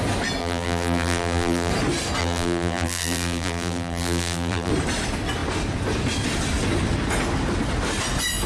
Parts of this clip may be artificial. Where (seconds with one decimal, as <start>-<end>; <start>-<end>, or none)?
0.4-1.7; 2.2-4.7